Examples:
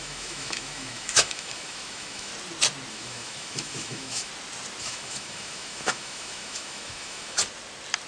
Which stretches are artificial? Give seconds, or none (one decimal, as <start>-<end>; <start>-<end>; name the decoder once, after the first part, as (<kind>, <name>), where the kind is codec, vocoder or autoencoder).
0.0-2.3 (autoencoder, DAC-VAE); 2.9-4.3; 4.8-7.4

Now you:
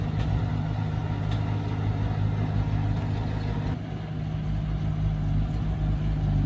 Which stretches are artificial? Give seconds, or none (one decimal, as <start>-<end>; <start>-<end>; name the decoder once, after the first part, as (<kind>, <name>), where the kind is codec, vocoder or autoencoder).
none

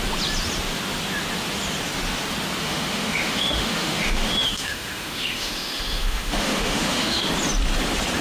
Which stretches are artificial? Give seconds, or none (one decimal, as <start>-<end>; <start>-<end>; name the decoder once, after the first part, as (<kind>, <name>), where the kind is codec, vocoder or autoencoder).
2.6-7.3 (autoencoder, DAC-VAE)